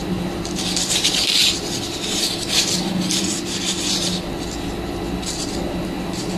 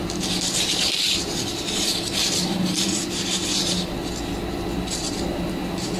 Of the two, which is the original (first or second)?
first